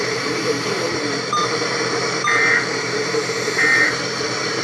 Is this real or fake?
fake